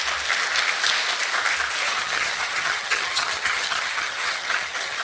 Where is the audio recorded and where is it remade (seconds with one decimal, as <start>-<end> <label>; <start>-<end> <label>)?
0.0-1.8 recorded; 1.8-5.0 remade